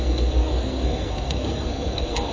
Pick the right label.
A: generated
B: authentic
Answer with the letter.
A